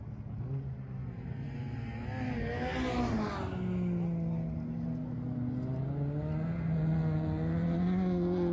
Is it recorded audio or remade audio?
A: recorded